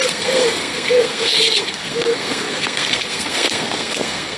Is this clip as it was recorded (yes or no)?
no